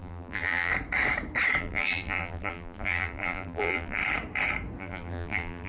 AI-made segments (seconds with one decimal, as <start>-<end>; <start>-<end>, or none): 0.0-0.7; 1.6-4.0; 4.8-5.7